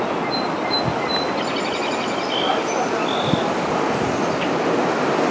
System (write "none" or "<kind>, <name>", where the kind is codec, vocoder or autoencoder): none